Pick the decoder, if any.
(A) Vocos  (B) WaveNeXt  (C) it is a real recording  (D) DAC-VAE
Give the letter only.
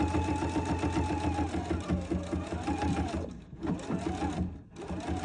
C